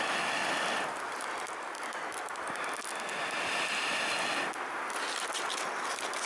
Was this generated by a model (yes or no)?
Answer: no